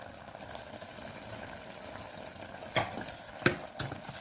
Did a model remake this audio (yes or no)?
no